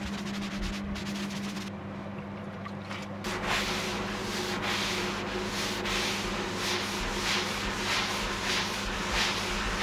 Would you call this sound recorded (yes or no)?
yes